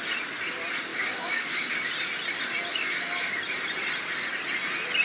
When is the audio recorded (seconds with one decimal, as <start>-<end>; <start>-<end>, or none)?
0.0-0.9; 1.7-2.7; 3.3-5.0